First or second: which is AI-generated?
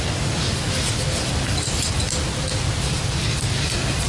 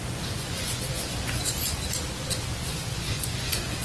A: second